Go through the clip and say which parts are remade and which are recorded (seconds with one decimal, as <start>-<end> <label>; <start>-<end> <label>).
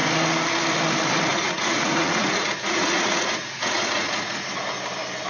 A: 0.0-1.3 recorded; 1.3-4.5 remade; 4.5-5.3 recorded